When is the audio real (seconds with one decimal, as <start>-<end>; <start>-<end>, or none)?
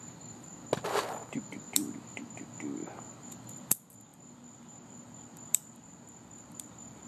none